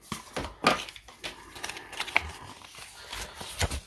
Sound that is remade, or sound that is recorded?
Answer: recorded